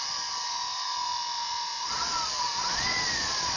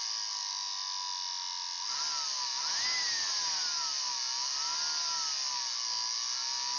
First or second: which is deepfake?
first